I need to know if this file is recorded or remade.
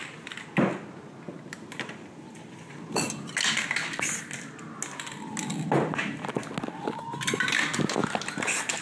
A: recorded